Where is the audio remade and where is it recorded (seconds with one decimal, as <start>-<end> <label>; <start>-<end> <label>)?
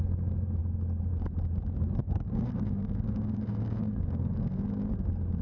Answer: 0.0-2.0 recorded; 2.0-5.4 remade